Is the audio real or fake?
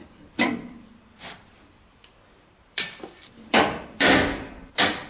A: fake